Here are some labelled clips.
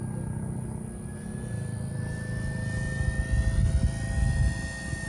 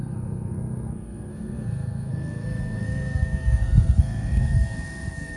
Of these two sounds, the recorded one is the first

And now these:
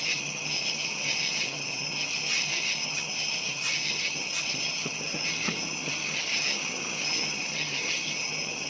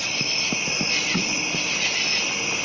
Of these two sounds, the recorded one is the second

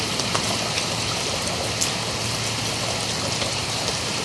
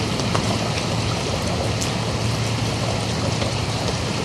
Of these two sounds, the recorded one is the first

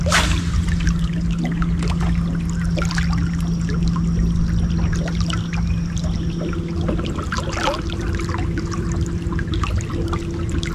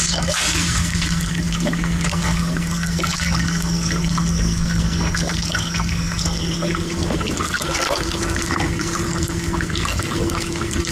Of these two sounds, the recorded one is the first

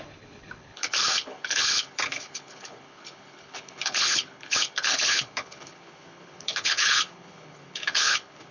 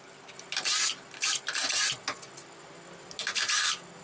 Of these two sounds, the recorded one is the second